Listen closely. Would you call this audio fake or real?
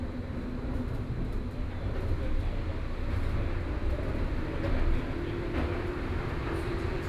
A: real